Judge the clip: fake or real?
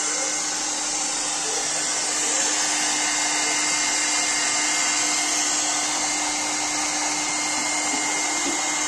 real